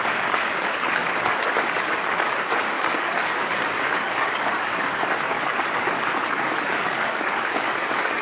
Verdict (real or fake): fake